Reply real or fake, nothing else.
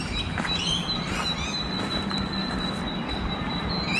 real